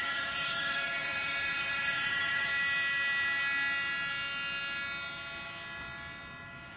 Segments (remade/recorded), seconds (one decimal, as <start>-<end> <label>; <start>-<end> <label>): 0.0-2.5 remade; 2.5-6.8 recorded